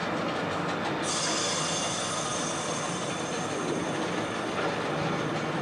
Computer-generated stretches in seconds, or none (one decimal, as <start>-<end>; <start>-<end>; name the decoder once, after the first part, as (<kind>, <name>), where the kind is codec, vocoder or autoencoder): none